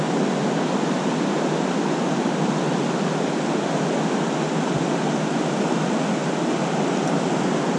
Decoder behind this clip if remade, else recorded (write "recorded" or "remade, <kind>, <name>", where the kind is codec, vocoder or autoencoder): recorded